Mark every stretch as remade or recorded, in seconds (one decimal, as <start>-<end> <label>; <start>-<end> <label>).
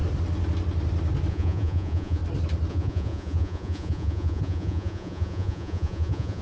0.0-1.3 recorded; 1.3-2.2 remade; 2.2-2.7 recorded; 2.7-6.4 remade